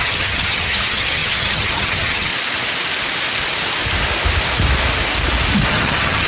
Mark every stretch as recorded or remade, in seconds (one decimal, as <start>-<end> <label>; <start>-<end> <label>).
0.0-2.3 remade; 2.3-5.7 recorded; 5.7-6.3 remade